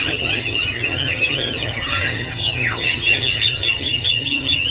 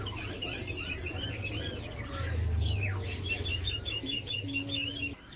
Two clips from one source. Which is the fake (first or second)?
first